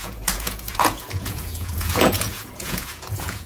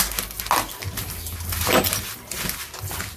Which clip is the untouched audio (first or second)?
second